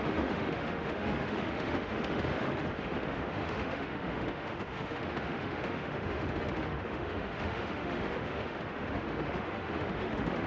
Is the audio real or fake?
fake